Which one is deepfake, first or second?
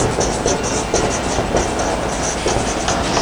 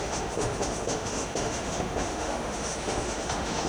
second